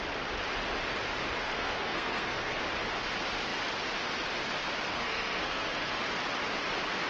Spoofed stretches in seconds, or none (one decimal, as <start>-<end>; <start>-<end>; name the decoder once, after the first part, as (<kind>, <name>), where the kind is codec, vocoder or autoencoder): 1.4-2.6 (codec, SNAC); 4.9-6.0